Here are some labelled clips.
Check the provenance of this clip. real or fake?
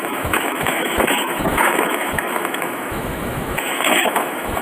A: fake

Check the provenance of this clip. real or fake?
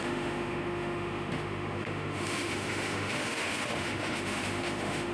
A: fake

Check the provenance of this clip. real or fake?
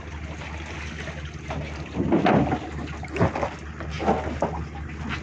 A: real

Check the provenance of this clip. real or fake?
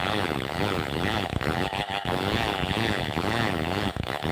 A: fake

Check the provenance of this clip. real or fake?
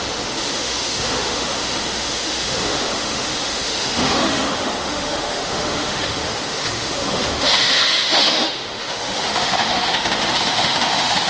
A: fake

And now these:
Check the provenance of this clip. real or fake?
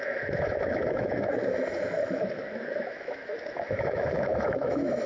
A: fake